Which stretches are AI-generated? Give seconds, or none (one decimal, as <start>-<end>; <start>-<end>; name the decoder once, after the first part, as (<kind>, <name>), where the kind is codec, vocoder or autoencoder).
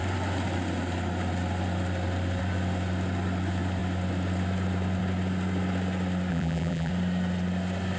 6.3-6.9 (vocoder, BigVGAN v2)